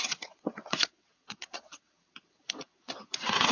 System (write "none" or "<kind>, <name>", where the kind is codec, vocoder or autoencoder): vocoder, WaveNeXt